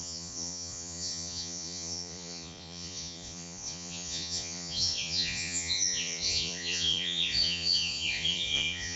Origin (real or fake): fake